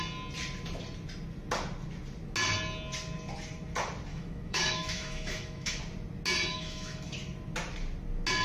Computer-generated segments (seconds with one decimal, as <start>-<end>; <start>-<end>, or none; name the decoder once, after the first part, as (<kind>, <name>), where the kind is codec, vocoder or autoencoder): 4.1-5.8 (autoencoder, DAC-VAE); 6.5-7.1